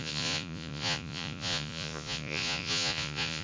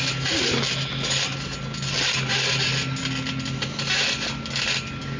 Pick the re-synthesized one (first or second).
first